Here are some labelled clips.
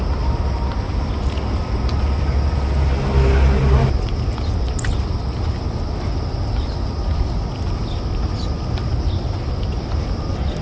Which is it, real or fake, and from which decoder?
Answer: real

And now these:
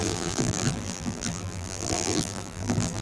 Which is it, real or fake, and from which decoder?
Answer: fake, vocoder, BigVGAN v2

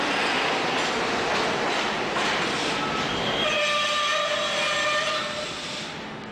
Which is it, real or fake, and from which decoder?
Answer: real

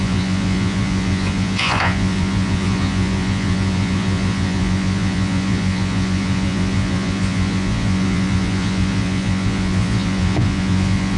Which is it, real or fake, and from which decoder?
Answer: fake, vocoder, Vocos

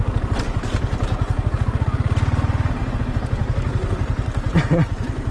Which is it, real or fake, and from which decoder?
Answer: real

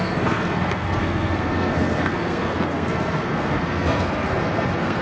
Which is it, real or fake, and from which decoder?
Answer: fake, codec, SNAC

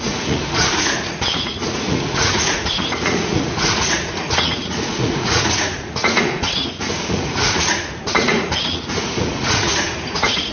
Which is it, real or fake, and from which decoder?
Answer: fake, vocoder, Vocos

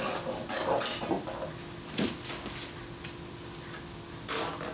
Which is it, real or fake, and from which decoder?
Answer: real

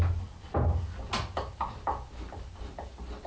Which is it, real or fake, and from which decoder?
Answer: real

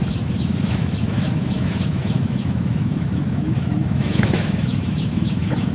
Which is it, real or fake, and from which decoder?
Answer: fake, autoencoder, DAC-VAE